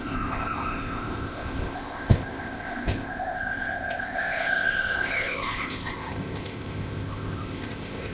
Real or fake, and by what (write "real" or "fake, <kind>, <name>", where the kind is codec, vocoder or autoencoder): fake, codec, ZipCodec